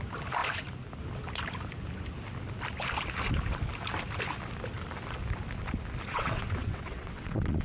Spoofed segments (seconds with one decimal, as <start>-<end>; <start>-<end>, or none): 6.1-7.6